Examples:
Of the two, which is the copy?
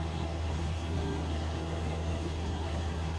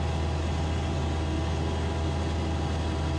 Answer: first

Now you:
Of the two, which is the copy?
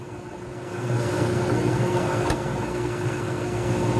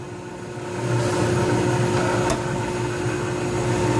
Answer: first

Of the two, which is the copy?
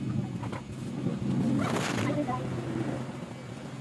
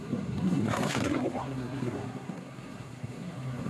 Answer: second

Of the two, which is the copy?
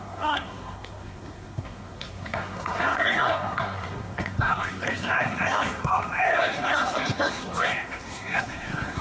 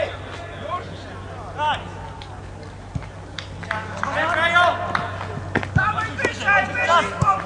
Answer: first